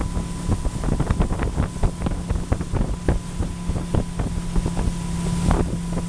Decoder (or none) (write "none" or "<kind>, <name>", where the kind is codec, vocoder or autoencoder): none